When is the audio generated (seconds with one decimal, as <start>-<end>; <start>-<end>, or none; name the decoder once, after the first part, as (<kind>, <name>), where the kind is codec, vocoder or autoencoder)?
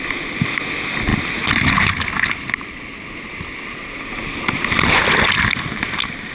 none